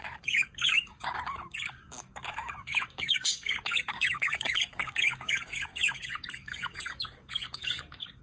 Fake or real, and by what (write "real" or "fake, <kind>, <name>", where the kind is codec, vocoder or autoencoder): fake, codec, DAC